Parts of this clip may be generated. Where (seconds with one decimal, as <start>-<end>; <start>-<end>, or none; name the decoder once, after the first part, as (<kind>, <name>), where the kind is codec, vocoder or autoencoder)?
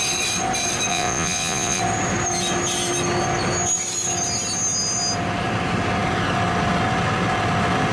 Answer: 0.9-1.8 (vocoder, Vocos)